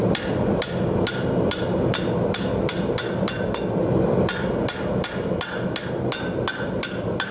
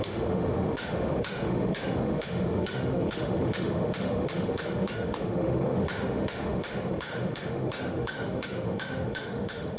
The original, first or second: first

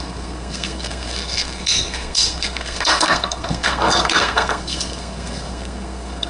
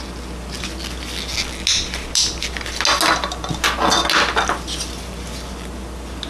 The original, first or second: second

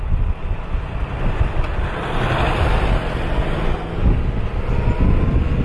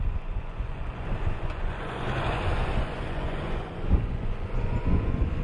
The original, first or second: first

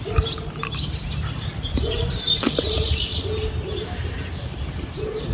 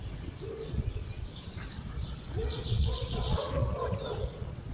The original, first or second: first